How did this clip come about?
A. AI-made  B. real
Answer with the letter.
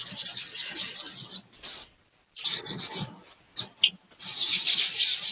B